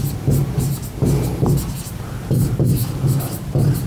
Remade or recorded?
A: recorded